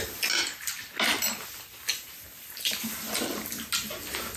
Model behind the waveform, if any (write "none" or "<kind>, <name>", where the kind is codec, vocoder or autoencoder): none